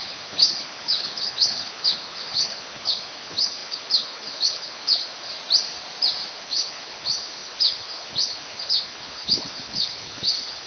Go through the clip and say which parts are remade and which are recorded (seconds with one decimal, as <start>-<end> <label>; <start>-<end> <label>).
0.0-5.3 remade; 5.3-6.3 recorded; 6.3-10.7 remade